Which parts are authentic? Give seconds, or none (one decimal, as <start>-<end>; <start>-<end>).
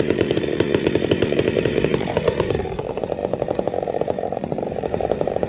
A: none